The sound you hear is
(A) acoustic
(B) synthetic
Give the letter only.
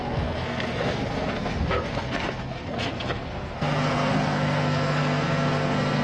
B